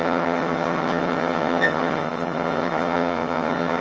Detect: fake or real fake